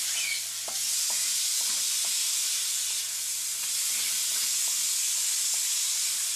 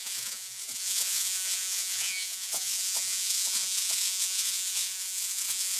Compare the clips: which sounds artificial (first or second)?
second